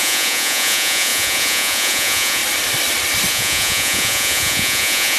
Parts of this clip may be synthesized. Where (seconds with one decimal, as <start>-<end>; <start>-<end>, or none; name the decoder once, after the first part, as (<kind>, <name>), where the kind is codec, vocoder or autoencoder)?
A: 0.0-2.4 (vocoder, Vocos); 3.3-5.2